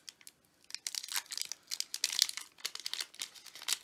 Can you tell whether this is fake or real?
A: real